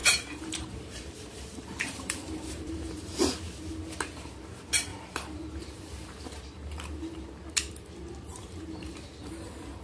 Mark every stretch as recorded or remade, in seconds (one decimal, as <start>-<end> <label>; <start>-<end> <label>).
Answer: 0.0-3.2 remade; 3.2-4.9 recorded; 4.9-5.9 remade; 5.9-8.3 recorded; 8.3-9.2 remade; 9.2-9.8 recorded